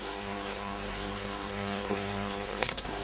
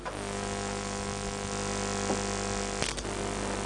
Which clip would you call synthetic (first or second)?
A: first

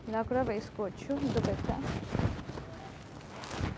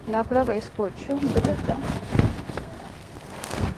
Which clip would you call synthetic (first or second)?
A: second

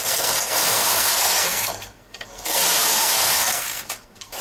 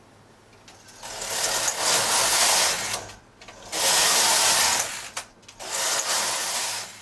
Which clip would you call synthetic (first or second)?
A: first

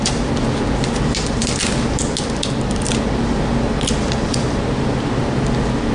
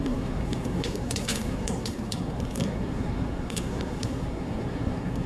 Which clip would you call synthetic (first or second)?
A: second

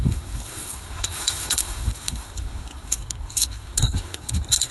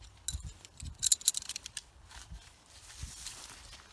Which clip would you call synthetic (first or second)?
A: first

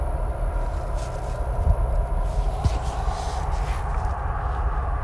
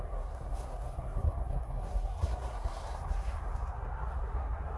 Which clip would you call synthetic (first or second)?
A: second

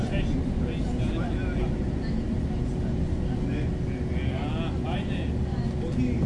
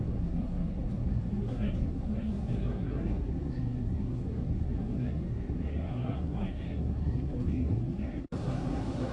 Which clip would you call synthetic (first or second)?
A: second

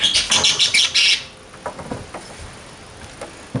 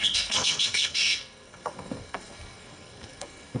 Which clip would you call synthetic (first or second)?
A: second